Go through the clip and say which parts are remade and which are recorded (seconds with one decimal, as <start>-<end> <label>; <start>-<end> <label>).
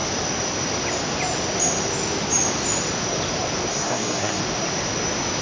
0.0-3.7 recorded; 3.7-4.4 remade; 4.4-5.4 recorded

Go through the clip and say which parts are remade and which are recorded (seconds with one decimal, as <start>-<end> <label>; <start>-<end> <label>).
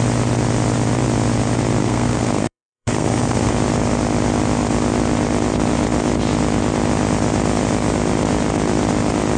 0.0-1.8 recorded; 1.8-3.5 remade; 3.5-9.4 recorded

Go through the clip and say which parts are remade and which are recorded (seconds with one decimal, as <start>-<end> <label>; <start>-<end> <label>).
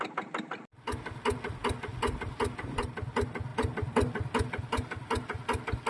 0.0-5.9 recorded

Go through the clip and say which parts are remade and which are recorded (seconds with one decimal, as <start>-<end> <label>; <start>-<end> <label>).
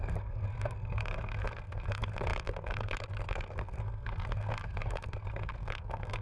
0.0-6.2 remade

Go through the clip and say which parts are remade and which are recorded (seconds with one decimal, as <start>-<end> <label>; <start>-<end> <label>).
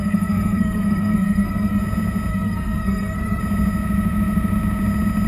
0.0-1.8 remade; 1.8-2.3 recorded; 2.3-3.4 remade; 3.4-5.3 recorded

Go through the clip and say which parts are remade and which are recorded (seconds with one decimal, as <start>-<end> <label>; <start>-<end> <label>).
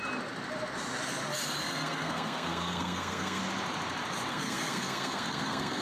0.0-1.6 recorded; 1.6-3.4 remade; 3.4-4.3 recorded; 4.3-5.8 remade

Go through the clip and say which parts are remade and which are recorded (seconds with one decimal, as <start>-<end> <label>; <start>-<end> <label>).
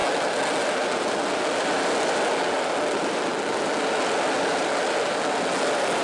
0.0-6.0 recorded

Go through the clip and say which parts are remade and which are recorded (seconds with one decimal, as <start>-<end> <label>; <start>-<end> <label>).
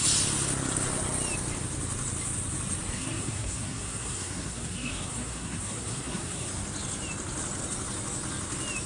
0.0-2.9 recorded; 2.9-6.5 remade; 6.5-8.9 recorded